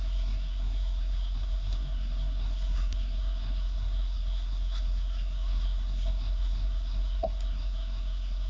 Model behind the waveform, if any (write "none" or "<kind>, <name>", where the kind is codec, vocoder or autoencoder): codec, SNAC